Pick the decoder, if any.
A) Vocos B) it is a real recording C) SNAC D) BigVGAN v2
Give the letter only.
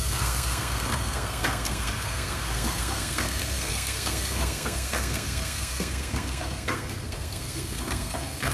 C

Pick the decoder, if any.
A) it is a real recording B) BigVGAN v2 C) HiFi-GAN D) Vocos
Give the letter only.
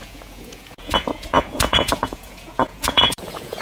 D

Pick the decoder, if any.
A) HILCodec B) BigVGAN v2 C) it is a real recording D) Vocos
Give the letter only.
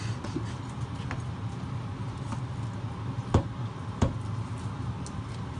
C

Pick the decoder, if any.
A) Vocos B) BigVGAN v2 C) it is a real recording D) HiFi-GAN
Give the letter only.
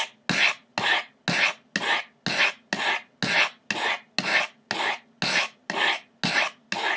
C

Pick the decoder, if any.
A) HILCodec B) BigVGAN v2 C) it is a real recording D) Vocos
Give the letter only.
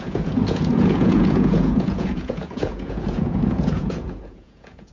D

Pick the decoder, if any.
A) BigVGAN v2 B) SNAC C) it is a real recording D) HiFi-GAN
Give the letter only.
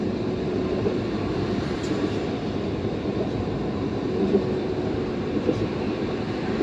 A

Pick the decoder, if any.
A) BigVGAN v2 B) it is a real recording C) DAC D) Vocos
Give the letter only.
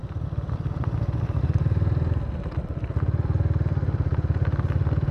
A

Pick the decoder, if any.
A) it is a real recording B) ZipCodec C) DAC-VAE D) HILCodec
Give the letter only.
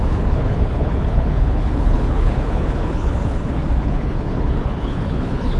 D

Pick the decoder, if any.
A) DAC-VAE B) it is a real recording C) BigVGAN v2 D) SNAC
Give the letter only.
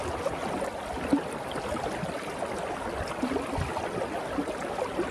B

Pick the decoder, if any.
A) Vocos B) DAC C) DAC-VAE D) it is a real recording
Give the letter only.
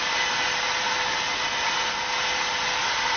D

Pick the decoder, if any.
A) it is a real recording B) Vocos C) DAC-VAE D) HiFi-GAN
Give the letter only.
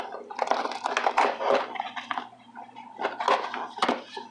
A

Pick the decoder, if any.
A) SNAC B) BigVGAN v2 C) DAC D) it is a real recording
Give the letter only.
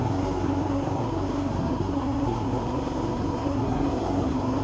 A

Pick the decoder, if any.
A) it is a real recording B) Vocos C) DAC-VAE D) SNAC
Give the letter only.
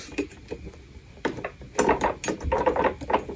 A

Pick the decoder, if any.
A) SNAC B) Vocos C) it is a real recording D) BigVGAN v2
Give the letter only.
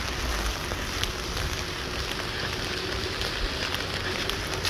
C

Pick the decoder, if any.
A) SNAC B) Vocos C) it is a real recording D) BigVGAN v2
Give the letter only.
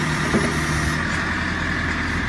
C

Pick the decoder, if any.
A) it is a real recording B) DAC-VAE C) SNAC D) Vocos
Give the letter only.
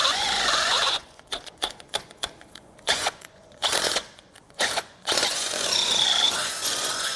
D